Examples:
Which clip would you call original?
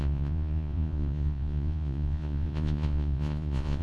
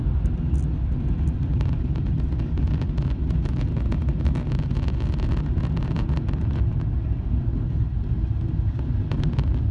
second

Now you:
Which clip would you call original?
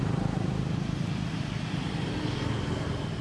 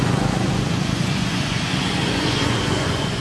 first